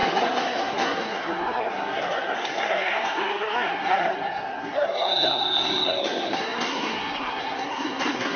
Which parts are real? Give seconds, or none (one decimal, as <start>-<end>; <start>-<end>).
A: none